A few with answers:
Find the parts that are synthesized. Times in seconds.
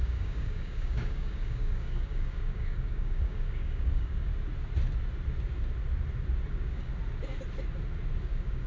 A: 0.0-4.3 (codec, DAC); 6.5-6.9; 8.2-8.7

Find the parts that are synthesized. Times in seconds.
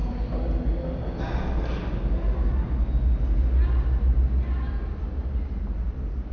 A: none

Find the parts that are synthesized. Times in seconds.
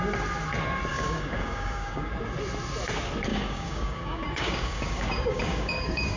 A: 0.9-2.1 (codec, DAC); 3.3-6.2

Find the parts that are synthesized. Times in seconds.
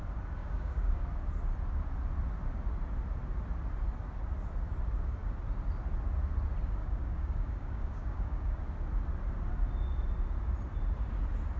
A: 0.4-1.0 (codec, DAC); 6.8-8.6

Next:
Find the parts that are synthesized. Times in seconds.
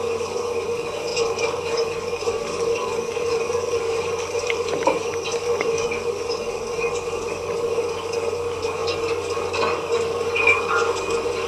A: 0.0-11.5 (codec, DAC)